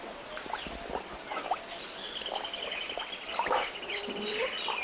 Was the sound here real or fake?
real